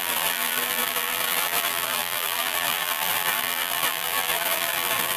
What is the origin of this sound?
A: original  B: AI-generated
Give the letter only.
B